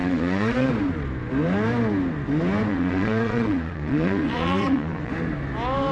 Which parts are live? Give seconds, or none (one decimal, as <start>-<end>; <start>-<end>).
0.7-2.7; 5.1-5.9

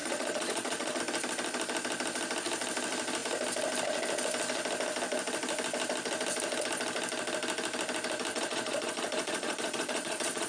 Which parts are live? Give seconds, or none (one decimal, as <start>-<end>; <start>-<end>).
1.0-8.3

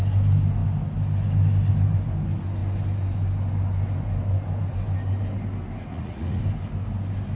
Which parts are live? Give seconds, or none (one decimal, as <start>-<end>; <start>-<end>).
0.0-5.9; 6.4-7.4

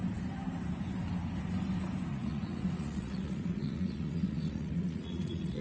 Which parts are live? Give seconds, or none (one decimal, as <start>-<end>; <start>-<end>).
0.0-2.1

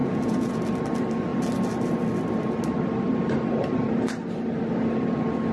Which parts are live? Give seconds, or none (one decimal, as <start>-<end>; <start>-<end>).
0.6-5.5

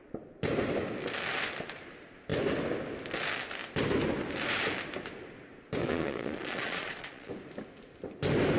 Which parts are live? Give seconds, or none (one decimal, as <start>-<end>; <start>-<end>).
0.0-5.8; 7.3-8.6

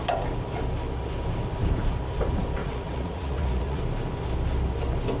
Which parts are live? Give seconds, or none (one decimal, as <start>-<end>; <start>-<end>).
0.0-2.6; 3.8-5.2

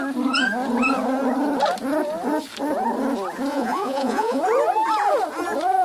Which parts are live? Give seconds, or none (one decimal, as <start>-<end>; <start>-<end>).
0.0-3.5; 4.4-5.8